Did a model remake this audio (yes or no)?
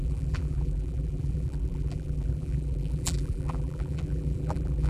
yes